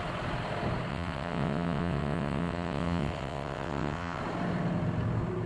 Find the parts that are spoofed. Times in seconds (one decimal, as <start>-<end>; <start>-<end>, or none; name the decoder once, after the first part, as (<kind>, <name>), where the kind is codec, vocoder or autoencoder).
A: 0.9-4.2 (vocoder, WaveNeXt)